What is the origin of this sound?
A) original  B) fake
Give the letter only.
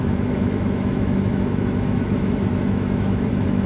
B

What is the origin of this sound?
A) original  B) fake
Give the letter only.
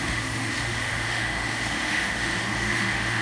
B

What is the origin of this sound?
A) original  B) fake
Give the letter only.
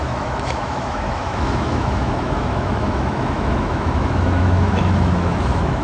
B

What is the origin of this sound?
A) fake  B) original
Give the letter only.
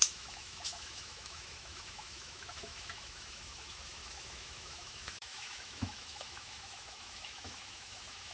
A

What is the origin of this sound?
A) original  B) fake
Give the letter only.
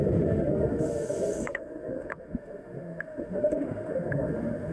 B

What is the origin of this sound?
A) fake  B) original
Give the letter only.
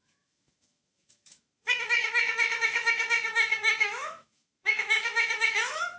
A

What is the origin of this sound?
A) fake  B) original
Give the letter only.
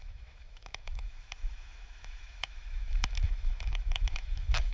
A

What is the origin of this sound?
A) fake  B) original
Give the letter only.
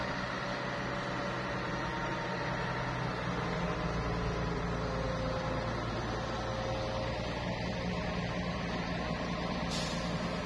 B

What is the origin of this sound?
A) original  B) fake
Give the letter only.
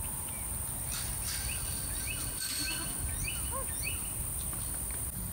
A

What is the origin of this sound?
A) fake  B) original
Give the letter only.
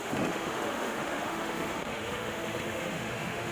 A